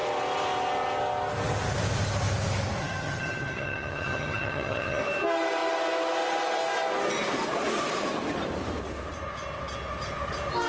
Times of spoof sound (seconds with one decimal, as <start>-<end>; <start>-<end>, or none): 2.8-5.0